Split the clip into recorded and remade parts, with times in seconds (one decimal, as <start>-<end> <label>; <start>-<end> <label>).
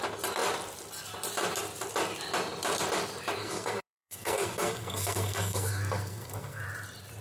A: 0.0-3.4 recorded; 3.4-6.6 remade; 6.6-7.2 recorded